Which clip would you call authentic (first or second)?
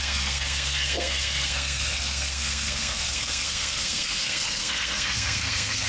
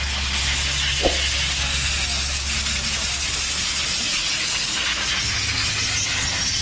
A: second